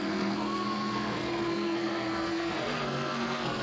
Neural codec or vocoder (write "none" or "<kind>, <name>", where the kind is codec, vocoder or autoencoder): codec, SNAC